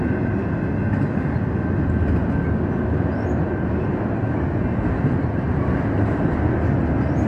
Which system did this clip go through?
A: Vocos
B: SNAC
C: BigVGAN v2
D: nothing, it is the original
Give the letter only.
D